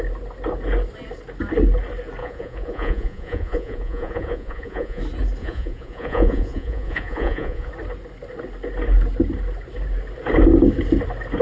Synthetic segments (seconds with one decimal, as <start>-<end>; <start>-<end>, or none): 2.2-5.0; 5.4-7.7